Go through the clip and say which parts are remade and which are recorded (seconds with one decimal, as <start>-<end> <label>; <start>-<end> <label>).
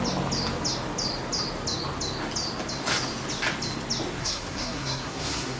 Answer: 0.0-4.2 recorded; 4.2-5.6 remade